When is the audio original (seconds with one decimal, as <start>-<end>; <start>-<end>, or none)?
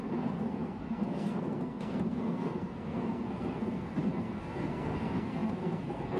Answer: none